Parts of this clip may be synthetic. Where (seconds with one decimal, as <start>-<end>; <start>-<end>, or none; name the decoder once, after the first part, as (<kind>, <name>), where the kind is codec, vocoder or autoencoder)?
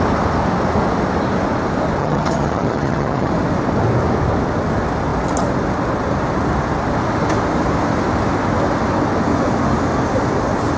2.0-3.3 (vocoder, HiFi-GAN)